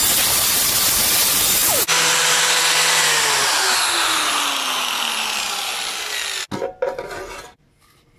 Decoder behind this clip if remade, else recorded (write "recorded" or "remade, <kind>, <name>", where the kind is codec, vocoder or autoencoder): recorded